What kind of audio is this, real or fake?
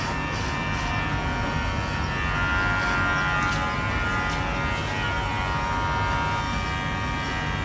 real